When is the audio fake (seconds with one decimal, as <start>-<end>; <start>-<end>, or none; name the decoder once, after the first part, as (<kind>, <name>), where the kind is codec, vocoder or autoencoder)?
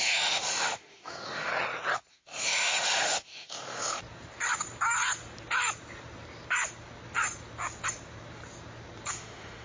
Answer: 0.0-1.5 (autoencoder, DAC-VAE); 2.1-4.0; 9.1-9.6